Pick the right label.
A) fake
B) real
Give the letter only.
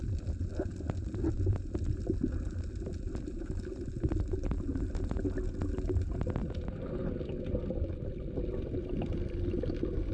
B